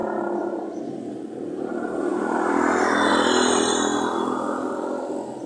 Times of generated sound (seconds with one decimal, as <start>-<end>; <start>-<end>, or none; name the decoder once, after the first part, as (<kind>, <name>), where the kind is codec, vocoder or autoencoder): none